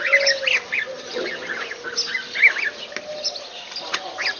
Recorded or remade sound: recorded